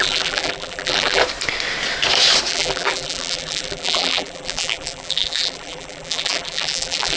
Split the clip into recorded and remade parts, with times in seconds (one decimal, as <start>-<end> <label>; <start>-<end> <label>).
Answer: 0.0-1.2 remade; 1.2-2.5 recorded; 2.5-7.2 remade